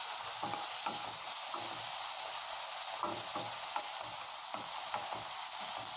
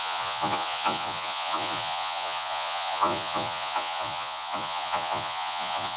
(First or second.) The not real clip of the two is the second